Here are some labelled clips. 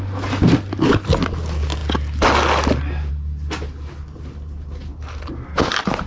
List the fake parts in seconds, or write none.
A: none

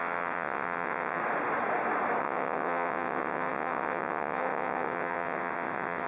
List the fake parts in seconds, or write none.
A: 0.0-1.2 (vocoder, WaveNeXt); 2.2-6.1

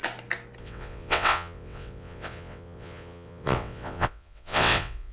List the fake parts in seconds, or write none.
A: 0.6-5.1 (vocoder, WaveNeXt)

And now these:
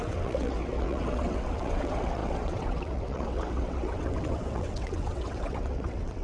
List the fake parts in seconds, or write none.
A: 0.0-6.2 (vocoder, WaveNeXt)